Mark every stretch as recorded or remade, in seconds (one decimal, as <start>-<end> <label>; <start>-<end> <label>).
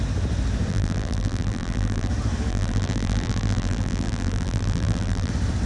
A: 0.0-0.7 recorded; 0.7-2.1 remade; 2.1-2.5 recorded; 2.5-5.3 remade; 5.3-5.7 recorded